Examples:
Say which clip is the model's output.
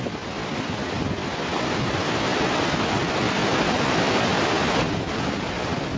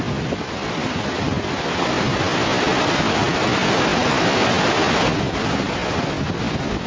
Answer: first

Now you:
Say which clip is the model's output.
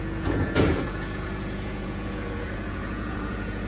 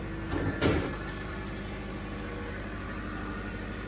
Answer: first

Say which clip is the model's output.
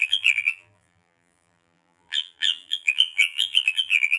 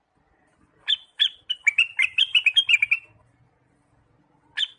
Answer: first